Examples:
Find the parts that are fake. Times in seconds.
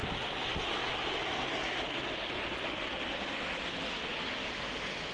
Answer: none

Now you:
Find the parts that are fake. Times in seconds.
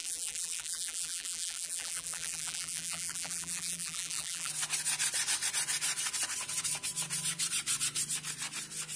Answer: 0.0-4.5 (vocoder, BigVGAN v2)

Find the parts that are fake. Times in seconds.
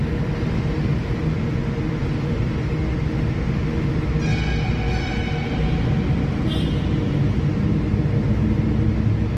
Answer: 2.0-2.5 (vocoder, BigVGAN v2)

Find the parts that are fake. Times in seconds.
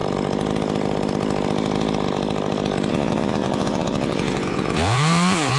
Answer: 2.9-5.6 (vocoder, Vocos)